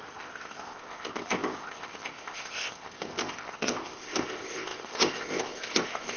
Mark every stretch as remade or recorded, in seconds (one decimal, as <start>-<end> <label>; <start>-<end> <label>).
0.0-6.2 remade